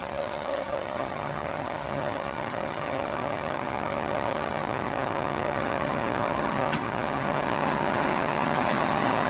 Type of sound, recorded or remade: remade